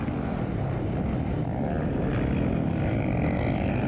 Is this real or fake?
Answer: real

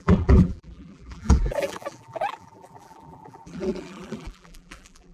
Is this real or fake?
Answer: fake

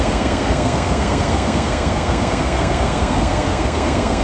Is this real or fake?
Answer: fake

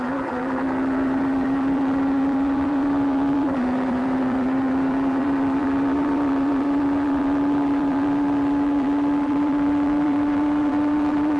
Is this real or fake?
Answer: fake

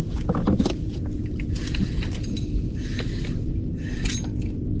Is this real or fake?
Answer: real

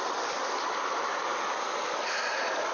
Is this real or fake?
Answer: real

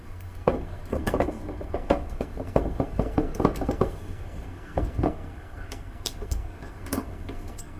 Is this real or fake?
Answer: fake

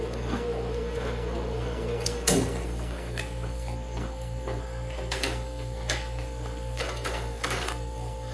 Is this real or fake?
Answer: fake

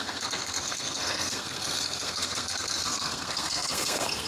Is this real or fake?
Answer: fake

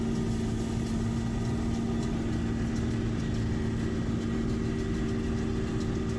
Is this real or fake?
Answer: real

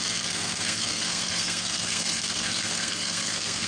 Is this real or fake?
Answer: fake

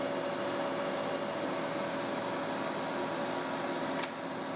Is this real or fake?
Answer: real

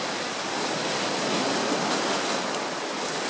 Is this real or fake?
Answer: real